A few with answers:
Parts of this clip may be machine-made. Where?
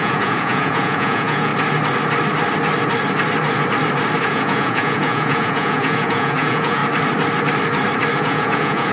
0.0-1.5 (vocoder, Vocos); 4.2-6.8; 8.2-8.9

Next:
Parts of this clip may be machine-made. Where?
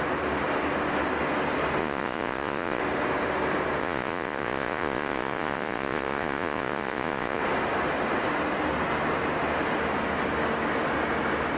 1.8-2.8 (vocoder, Vocos); 3.8-7.4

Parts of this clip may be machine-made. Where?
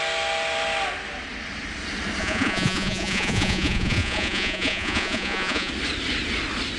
2.2-5.7 (vocoder, Vocos)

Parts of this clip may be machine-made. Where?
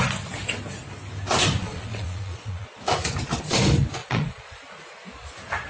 1.6-2.9 (vocoder, Vocos); 4.0-4.6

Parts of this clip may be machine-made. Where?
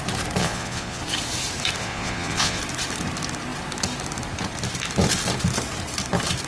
0.4-1.0 (vocoder, Vocos); 1.8-2.6